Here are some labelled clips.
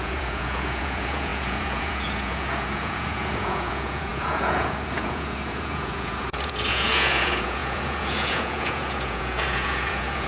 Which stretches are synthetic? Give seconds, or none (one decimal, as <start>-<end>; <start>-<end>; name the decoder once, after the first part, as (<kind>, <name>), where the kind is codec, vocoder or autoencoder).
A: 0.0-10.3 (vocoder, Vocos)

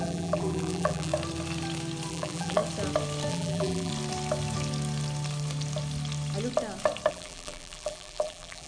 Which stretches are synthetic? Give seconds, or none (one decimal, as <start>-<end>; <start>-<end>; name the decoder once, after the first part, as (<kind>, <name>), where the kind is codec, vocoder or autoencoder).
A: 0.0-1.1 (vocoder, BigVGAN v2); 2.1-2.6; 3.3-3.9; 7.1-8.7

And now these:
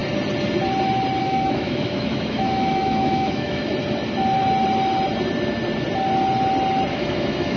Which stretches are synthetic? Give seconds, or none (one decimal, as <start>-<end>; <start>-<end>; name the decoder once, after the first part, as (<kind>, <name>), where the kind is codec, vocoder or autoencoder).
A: 1.2-3.7 (autoencoder, DAC-VAE); 6.9-7.6